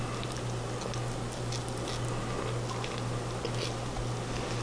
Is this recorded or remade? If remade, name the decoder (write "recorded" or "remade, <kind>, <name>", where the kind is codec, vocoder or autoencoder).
recorded